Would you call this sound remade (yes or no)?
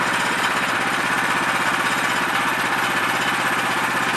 no